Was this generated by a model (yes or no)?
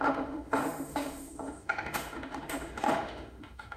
yes